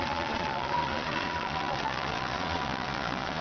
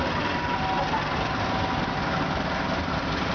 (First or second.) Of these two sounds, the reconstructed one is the first